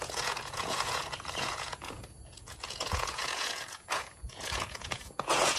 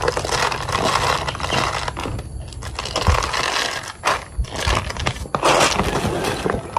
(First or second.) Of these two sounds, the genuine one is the second